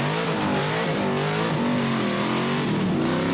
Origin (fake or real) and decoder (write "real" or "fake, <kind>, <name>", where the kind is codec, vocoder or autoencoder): real